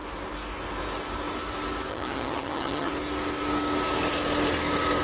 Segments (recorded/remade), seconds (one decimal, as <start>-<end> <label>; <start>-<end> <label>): 0.0-1.9 recorded; 1.9-2.9 remade; 2.9-5.0 recorded